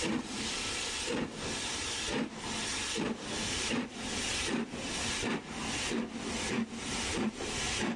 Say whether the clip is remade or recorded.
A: recorded